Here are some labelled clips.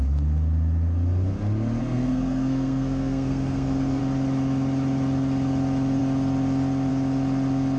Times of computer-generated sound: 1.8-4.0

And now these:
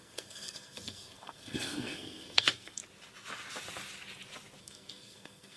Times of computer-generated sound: 0.0-2.8; 4.6-5.6